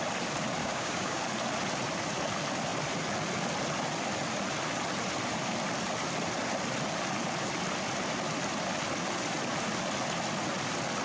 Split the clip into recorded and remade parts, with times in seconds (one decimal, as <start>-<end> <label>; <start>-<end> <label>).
0.0-0.6 recorded; 0.6-1.2 remade; 1.2-11.0 recorded